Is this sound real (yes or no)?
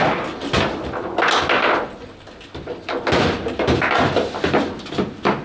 yes